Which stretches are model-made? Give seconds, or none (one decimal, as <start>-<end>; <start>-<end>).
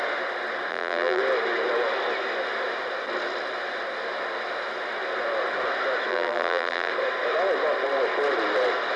0.7-1.2; 6.1-6.9